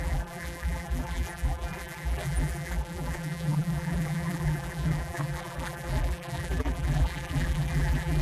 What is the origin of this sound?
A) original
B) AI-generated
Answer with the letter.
B